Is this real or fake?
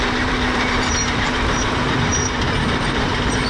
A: fake